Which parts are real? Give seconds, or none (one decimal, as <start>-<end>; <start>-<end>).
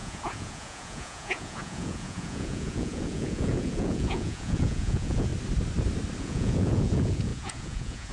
5.3-6.2